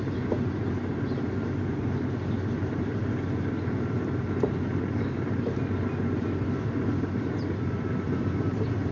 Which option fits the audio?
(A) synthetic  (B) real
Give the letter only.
B